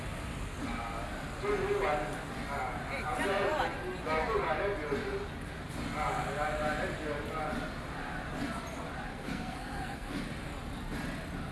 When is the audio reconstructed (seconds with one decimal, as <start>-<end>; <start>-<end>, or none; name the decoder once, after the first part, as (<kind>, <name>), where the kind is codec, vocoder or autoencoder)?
9.1-10.2 (codec, SNAC)

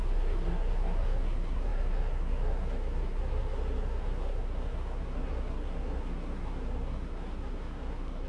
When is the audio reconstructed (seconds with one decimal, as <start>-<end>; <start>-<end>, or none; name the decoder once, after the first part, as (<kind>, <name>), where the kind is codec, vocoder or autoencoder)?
0.0-8.3 (codec, SNAC)

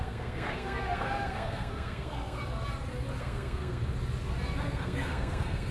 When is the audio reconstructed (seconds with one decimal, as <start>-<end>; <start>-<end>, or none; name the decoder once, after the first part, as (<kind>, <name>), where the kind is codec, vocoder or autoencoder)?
0.0-2.4 (codec, SNAC); 3.2-3.8; 4.6-5.7

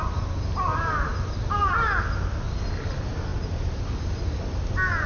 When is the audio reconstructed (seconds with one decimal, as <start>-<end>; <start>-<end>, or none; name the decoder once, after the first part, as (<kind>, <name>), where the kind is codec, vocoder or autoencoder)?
none